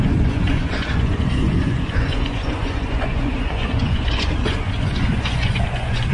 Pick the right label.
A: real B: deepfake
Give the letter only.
B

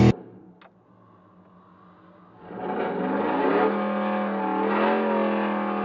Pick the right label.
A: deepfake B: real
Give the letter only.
B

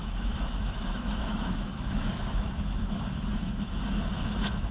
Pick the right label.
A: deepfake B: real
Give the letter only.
A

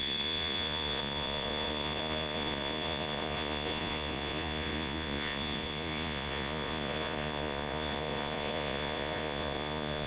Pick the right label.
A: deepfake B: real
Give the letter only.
A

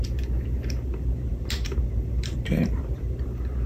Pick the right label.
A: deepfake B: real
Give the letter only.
A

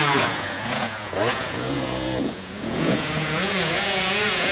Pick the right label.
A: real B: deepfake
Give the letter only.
B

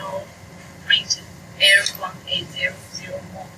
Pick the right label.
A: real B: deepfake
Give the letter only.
A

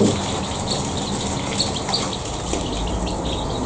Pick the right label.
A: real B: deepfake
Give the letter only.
A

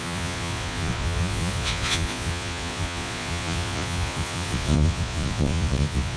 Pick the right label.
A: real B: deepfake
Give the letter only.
B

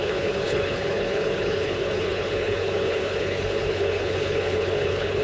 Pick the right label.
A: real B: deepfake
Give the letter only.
B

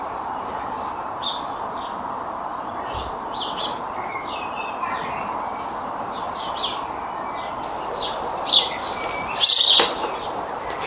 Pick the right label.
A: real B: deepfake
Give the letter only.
A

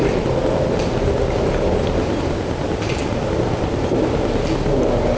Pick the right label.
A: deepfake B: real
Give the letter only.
B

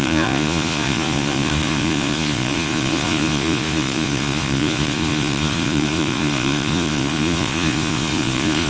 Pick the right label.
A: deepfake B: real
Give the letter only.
A